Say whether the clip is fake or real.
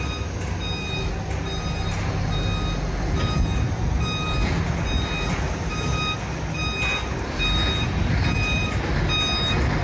real